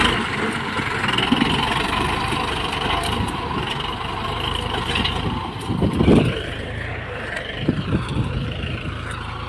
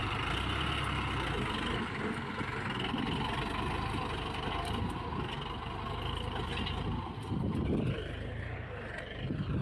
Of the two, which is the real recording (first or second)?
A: second